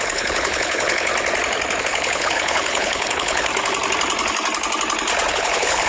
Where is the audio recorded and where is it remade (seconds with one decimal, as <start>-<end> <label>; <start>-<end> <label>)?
0.0-1.1 remade; 1.1-1.8 recorded; 1.8-3.5 remade; 3.5-5.3 recorded; 5.3-5.9 remade